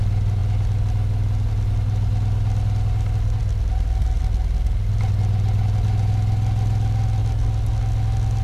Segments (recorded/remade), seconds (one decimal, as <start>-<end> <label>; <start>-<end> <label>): 0.0-8.4 recorded